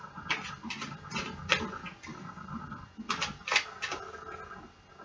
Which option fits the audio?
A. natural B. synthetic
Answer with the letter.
A